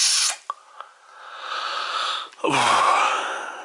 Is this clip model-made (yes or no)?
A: no